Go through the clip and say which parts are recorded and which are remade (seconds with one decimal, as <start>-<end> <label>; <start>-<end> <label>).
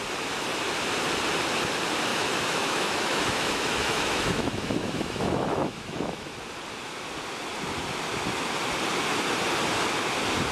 0.0-2.1 recorded; 2.1-6.3 remade; 6.3-10.5 recorded